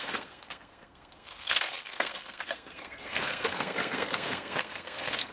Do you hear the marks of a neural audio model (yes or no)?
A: yes